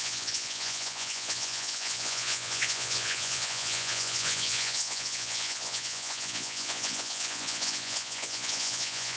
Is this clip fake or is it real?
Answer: fake